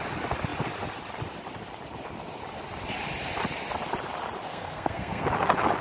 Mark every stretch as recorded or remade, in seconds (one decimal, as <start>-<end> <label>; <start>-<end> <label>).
0.0-4.5 recorded; 4.5-5.2 remade; 5.2-5.8 recorded